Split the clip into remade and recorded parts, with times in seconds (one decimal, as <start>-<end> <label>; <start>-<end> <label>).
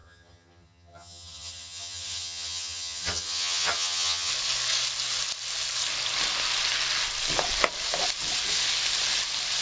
0.0-4.3 remade; 4.3-9.6 recorded